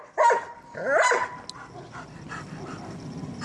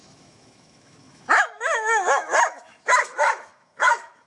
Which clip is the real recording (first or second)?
first